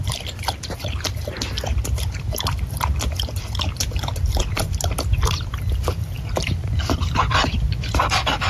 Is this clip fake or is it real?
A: real